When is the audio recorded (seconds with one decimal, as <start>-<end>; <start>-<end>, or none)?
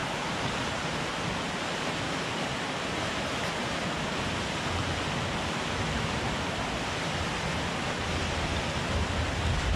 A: 1.2-9.8